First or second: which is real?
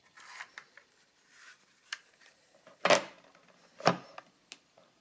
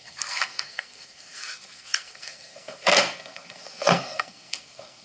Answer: first